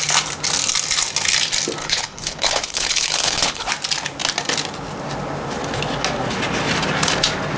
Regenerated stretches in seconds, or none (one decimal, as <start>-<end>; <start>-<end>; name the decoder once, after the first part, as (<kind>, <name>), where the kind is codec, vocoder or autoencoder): 1.8-3.7 (codec, HILCodec)